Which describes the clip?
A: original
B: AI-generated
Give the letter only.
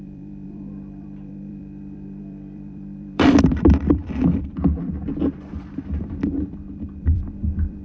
B